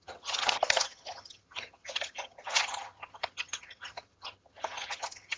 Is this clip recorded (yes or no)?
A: no